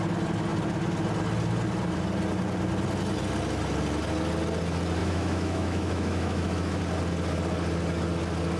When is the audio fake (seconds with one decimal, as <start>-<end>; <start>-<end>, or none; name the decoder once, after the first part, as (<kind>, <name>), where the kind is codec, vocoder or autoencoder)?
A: 5.0-6.8 (autoencoder, DAC-VAE)